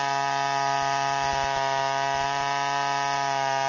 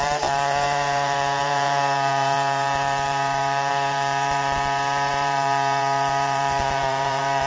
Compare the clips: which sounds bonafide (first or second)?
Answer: first